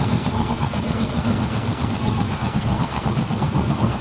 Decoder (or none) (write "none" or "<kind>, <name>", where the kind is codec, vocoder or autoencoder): codec, SNAC